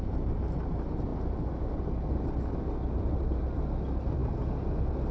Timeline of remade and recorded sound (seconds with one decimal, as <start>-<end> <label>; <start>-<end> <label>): 0.0-5.1 recorded